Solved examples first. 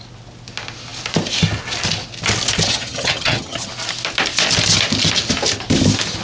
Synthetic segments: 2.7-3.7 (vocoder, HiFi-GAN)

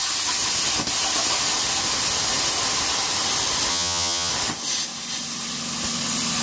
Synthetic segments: 3.7-4.3 (vocoder, HiFi-GAN)

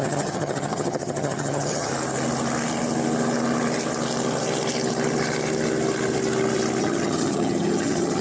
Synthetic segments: 0.0-1.9 (vocoder, HiFi-GAN); 6.8-8.2

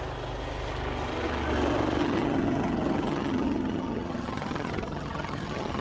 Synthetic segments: 2.0-5.8 (vocoder, HiFi-GAN)

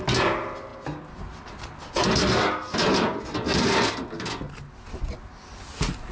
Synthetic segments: none

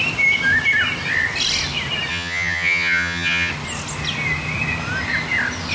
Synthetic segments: 2.1-3.5 (vocoder, HiFi-GAN)

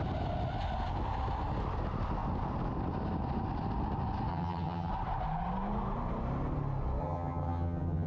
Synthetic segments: 4.3-4.9 (vocoder, HiFi-GAN); 7.0-8.1

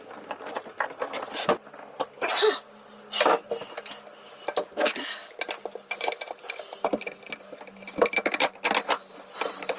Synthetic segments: none